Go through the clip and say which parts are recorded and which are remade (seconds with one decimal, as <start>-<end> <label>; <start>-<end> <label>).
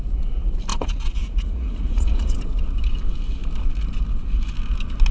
0.0-0.7 recorded; 0.7-2.4 remade; 2.4-5.1 recorded